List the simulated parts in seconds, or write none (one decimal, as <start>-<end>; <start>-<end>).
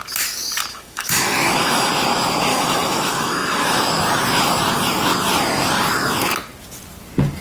0.7-1.9; 2.5-3.8